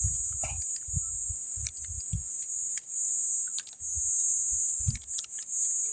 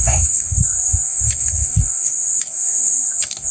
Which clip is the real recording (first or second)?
first